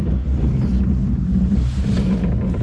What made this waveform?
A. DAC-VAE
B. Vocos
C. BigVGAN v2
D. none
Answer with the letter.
C